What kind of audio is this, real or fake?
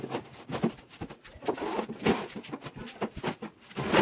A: real